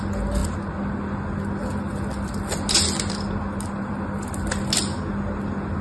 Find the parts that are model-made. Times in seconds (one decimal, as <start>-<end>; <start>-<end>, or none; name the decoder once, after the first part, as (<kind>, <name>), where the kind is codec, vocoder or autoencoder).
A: none